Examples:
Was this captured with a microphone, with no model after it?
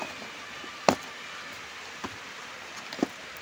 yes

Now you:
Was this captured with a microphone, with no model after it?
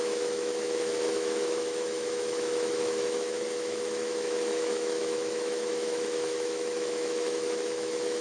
no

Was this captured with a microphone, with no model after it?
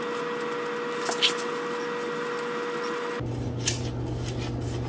yes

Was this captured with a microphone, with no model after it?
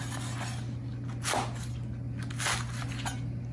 yes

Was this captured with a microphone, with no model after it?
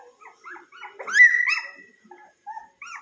yes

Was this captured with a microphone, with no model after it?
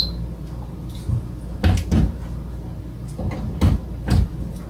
yes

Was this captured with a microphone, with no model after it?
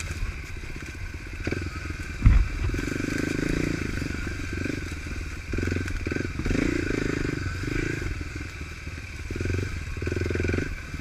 yes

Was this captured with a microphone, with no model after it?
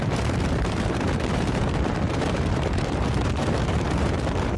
no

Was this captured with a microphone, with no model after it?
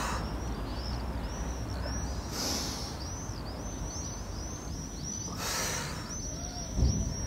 yes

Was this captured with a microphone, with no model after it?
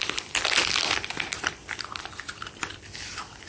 no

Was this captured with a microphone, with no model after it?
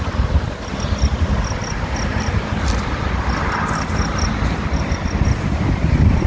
yes